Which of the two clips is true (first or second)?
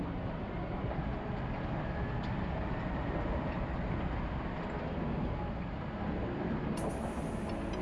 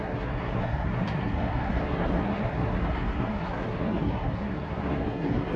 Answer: first